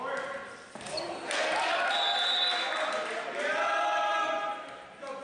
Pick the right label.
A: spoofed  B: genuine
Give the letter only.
B